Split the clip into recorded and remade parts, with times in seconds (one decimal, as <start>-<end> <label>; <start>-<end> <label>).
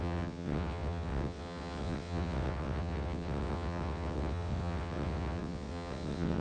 0.0-6.4 remade